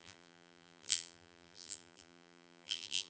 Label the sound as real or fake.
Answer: fake